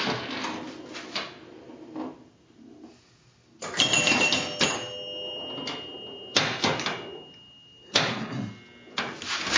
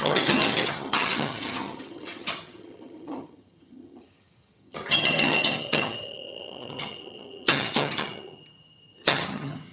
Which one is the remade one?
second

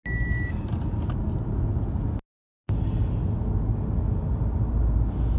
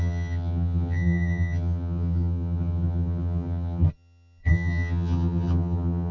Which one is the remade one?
second